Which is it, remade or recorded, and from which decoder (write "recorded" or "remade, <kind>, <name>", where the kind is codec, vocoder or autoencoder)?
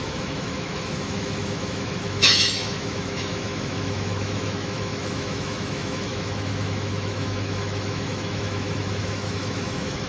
remade, autoencoder, DAC-VAE